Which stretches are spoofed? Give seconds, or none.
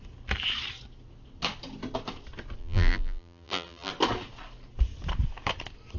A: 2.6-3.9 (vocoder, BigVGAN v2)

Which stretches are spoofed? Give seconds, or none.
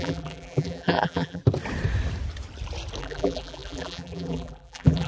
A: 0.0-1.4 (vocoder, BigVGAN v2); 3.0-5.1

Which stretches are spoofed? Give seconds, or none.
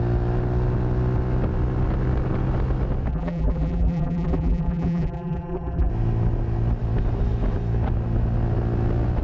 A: 3.1-5.9 (vocoder, BigVGAN v2)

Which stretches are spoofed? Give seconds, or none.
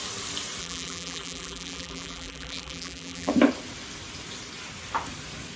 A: 0.6-3.3 (vocoder, BigVGAN v2)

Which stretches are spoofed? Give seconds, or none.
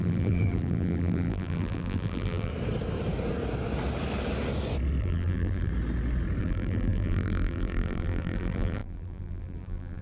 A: 0.0-2.5 (vocoder, BigVGAN v2); 5.0-5.7; 6.4-10.0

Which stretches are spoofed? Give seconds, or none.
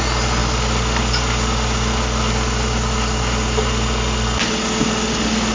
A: none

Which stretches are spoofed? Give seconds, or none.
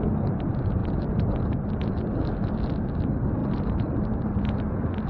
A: 0.8-1.8 (vocoder, BigVGAN v2); 3.4-4.4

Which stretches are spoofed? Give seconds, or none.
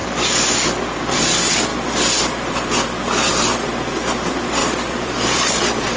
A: 0.0-0.5 (vocoder, BigVGAN v2); 4.6-5.6